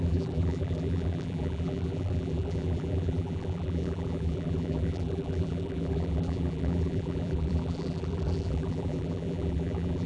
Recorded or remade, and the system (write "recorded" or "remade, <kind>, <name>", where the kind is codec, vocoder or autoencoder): remade, vocoder, BigVGAN v2